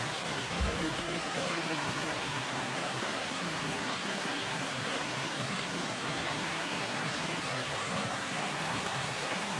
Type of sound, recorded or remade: remade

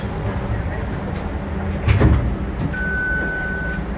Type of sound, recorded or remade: recorded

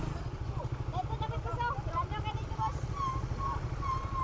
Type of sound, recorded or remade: recorded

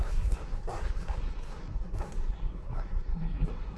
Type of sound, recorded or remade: remade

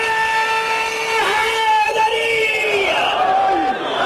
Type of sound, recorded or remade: remade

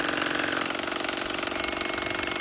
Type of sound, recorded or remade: recorded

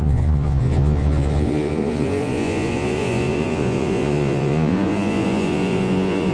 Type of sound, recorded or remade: remade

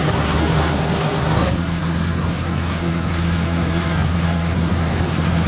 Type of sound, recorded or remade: remade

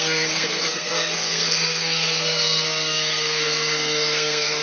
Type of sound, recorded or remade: remade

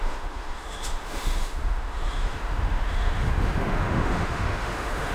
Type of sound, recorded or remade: remade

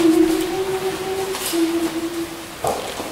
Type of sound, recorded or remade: recorded